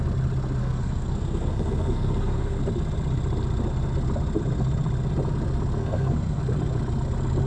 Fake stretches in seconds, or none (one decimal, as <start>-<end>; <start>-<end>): 0.6-2.6; 5.8-6.4